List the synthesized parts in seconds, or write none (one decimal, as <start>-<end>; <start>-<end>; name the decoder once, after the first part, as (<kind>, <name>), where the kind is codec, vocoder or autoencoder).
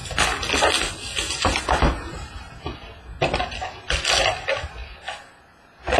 none